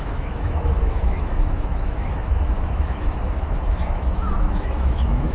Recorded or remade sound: remade